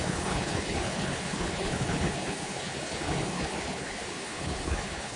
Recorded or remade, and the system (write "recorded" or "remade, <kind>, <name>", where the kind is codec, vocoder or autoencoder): remade, codec, HILCodec